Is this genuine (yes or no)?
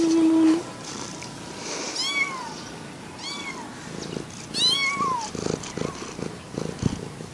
yes